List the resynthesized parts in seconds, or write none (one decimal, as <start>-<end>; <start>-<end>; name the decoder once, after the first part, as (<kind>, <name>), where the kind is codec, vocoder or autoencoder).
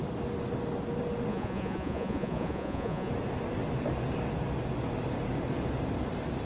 1.3-3.1 (vocoder, Vocos)